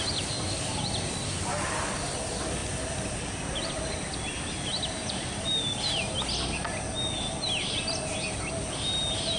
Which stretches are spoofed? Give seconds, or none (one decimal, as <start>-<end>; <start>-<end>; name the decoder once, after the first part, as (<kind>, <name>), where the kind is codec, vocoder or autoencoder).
2.6-3.7 (vocoder, BigVGAN v2); 4.7-5.8